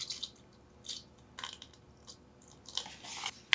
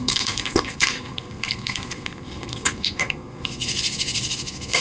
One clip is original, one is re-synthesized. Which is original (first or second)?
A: first